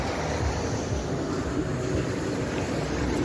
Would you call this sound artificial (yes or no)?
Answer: no